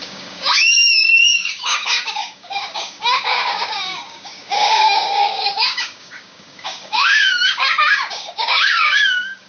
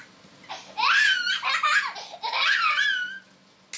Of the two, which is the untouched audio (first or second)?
second